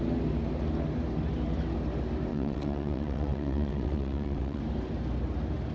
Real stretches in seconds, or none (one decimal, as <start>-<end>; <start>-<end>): 0.0-2.3; 4.6-5.7